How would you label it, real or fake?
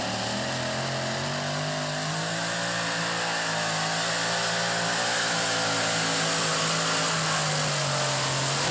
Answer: real